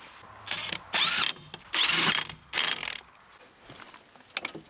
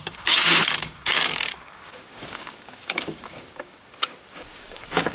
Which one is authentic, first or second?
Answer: first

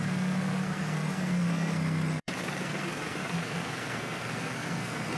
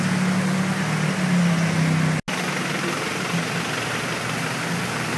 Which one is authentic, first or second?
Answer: second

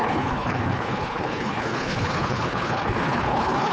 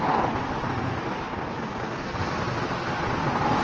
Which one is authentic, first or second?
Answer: second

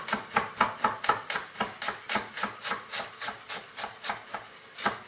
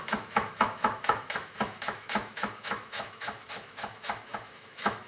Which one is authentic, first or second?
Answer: first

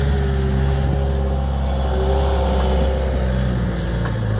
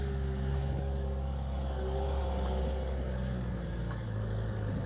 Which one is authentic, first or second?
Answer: first